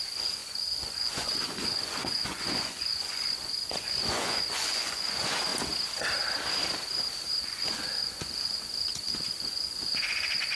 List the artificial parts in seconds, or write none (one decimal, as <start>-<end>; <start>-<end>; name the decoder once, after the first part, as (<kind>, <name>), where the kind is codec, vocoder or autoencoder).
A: 0.0-5.5 (vocoder, Vocos); 7.4-10.5